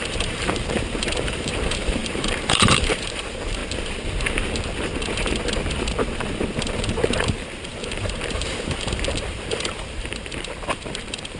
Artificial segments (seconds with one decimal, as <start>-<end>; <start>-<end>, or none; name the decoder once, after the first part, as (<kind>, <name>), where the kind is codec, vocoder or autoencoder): 0.0-3.6 (vocoder, BigVGAN v2); 6.6-11.4